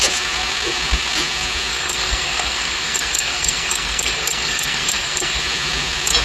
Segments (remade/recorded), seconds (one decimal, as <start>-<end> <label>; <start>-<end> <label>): 0.0-1.7 recorded; 1.7-5.4 remade; 5.4-6.2 recorded